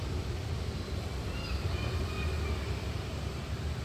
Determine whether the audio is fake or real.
fake